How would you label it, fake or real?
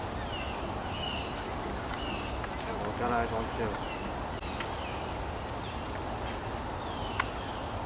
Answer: real